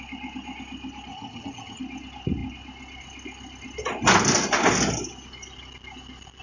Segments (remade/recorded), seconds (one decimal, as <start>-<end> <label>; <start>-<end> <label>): 0.0-1.1 recorded; 1.1-1.8 remade; 1.8-6.4 recorded